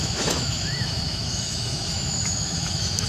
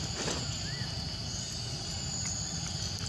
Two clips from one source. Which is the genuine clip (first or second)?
second